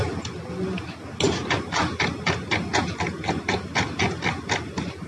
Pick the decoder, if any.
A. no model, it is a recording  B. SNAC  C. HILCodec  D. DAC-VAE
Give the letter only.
A